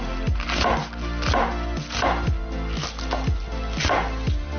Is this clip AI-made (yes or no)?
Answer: no